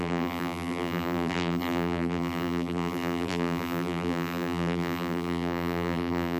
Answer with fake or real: fake